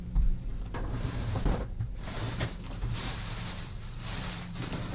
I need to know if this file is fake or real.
fake